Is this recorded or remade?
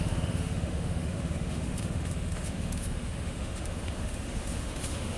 remade